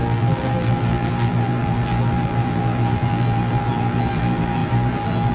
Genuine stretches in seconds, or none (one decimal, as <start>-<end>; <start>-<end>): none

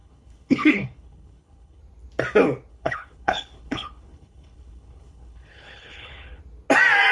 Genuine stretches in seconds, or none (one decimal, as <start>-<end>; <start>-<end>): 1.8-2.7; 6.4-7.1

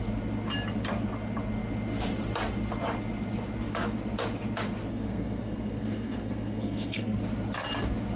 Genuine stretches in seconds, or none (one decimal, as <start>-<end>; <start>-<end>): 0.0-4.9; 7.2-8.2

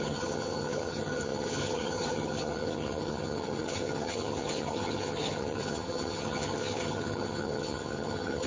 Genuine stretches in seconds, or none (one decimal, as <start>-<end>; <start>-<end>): none

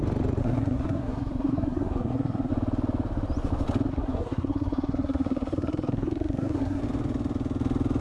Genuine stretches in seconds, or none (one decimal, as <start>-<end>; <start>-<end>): 0.0-0.4; 2.5-3.9; 6.8-8.0